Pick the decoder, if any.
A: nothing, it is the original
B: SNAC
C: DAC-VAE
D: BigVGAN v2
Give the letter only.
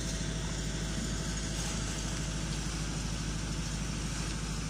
A